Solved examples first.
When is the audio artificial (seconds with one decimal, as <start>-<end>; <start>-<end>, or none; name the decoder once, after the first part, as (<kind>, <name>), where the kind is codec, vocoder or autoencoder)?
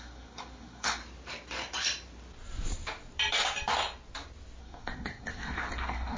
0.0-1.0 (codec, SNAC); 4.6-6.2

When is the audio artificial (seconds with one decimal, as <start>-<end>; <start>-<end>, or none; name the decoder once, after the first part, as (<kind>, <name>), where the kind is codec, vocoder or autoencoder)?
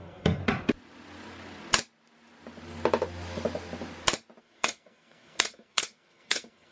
0.0-0.4 (codec, SNAC); 4.4-6.7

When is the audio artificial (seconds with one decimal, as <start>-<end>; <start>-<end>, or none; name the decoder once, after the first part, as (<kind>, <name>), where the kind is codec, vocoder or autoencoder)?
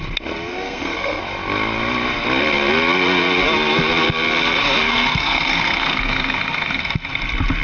0.5-1.2 (codec, SNAC); 4.9-6.8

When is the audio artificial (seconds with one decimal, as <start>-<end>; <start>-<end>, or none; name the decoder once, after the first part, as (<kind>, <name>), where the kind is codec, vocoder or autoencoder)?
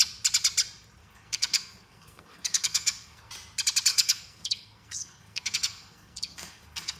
1.0-3.3 (codec, SNAC); 3.9-7.0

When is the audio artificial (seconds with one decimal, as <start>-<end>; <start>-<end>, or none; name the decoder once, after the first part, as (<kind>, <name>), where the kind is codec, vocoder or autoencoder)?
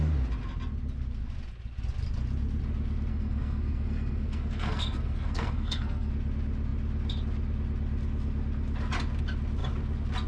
3.1-6.1 (codec, SNAC)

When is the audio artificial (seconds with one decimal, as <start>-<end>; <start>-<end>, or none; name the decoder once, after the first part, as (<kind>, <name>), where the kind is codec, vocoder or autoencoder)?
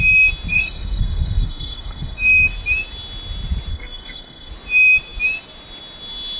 0.5-2.5 (codec, SNAC); 3.7-4.5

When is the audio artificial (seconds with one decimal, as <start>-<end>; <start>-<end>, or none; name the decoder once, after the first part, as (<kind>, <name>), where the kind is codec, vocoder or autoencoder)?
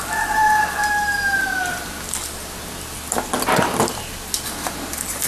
none